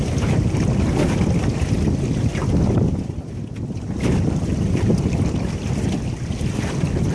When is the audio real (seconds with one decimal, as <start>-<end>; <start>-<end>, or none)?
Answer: 0.0-2.3; 5.9-7.1